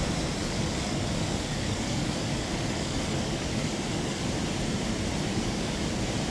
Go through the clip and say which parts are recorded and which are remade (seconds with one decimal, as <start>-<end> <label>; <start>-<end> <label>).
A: 0.0-0.4 recorded; 0.4-4.2 remade; 4.2-5.3 recorded; 5.3-5.8 remade; 5.8-6.3 recorded